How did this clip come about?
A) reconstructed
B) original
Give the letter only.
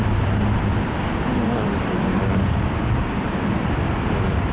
A